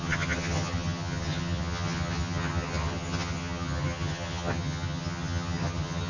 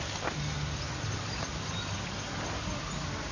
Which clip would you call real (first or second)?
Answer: second